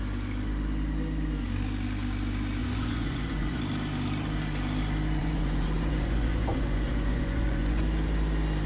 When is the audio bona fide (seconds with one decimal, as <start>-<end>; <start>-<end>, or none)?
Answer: 0.0-2.6; 3.6-5.2; 7.8-8.7